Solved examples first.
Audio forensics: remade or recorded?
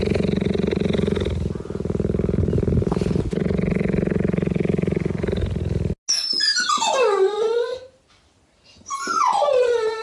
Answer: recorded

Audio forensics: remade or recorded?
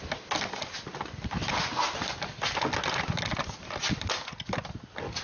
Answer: recorded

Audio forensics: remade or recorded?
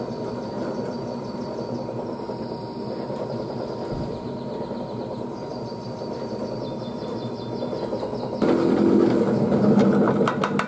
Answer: recorded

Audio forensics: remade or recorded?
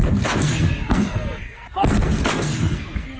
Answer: remade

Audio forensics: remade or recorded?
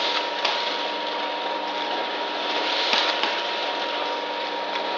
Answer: recorded